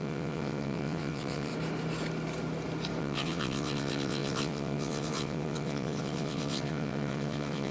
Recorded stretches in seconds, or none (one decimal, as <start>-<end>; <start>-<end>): 1.5-3.0